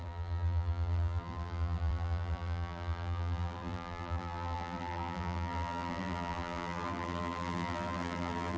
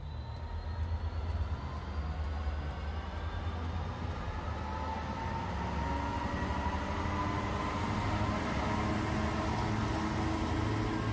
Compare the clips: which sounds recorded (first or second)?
second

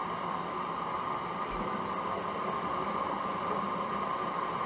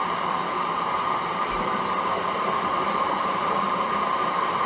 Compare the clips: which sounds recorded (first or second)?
first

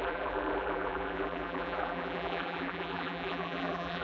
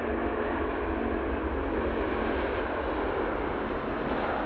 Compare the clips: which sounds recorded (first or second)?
second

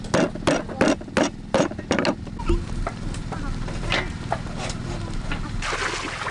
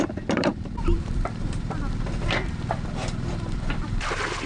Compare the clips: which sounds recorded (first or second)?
first